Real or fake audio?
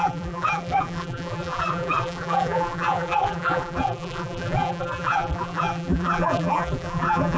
fake